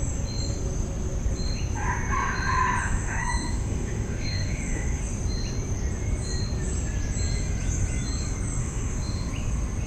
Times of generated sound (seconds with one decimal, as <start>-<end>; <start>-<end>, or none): 2.8-5.0; 8.6-9.3